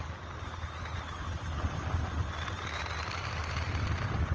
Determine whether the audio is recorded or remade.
recorded